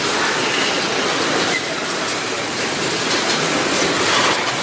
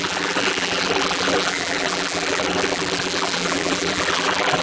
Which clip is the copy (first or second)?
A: second